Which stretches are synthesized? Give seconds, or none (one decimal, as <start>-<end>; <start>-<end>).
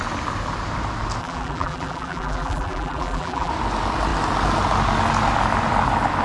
1.2-3.5